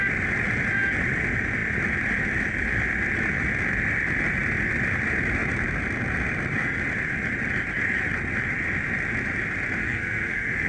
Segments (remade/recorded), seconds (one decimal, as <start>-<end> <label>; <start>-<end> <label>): 0.0-9.8 recorded; 9.8-10.7 remade